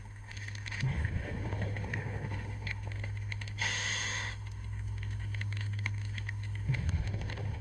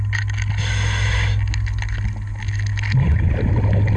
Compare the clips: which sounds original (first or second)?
second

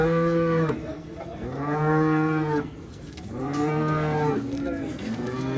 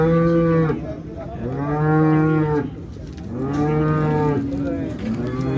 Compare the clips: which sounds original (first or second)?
second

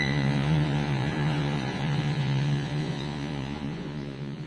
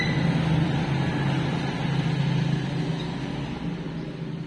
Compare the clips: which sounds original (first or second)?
second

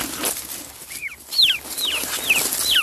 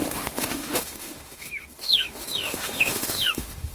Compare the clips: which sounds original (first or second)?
first